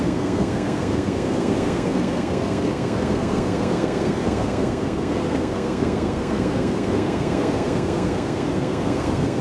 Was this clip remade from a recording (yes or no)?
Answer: yes